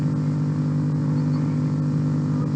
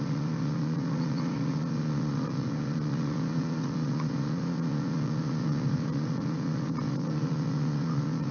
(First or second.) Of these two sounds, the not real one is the second